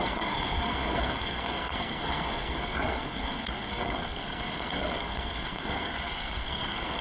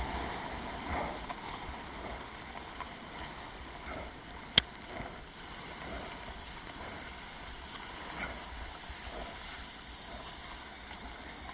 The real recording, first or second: second